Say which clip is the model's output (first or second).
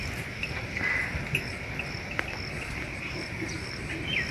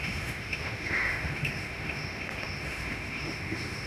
second